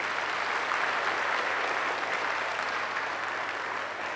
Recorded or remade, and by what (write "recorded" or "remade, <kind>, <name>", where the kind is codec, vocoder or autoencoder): recorded